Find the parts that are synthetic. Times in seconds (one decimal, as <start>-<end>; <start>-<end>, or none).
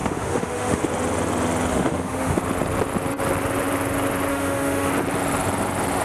0.0-0.8; 1.7-2.4; 4.3-4.9